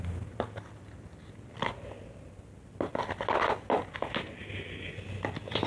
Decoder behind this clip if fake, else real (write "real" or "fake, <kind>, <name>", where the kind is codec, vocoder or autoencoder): real